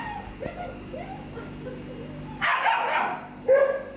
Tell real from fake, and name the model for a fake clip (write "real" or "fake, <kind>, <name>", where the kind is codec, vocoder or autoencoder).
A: real